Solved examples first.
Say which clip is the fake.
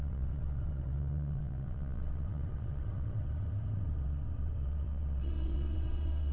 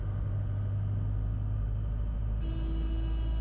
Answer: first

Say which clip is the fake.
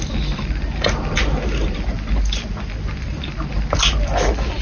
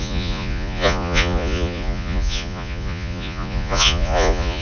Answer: second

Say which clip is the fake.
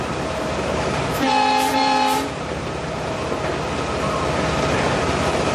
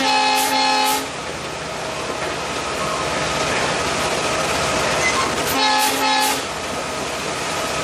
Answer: first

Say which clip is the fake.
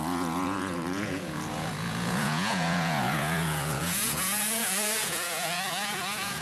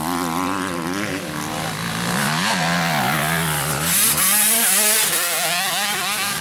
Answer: first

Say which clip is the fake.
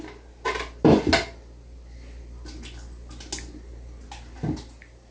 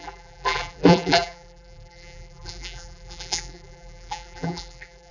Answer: second